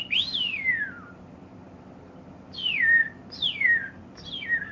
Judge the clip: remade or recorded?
recorded